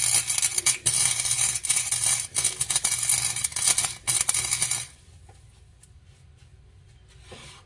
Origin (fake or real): real